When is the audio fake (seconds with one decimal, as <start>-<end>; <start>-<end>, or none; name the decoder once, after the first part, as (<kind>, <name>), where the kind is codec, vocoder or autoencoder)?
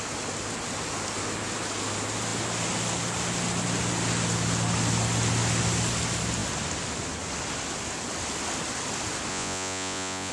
9.3-10.3 (vocoder, Vocos)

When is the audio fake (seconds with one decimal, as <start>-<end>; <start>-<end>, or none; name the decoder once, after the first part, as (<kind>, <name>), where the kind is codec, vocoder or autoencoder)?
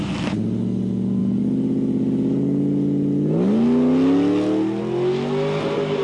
none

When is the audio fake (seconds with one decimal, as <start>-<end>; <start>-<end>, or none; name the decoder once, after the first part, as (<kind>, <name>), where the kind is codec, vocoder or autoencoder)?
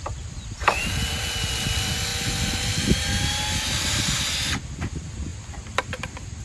0.0-2.1 (vocoder, BigVGAN v2); 3.8-6.4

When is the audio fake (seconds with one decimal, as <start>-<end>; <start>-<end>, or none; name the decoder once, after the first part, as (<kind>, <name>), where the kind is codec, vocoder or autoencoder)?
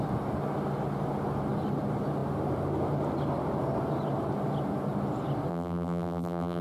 5.5-6.6 (vocoder, BigVGAN v2)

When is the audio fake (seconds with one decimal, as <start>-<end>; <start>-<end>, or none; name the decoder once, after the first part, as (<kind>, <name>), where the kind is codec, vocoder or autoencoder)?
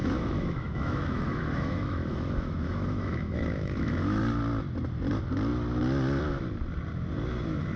0.0-4.2 (autoencoder, DAC-VAE)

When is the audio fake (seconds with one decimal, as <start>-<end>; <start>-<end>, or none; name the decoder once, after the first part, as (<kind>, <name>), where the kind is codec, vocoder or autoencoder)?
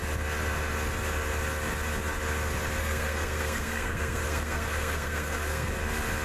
2.8-5.7 (codec, SNAC)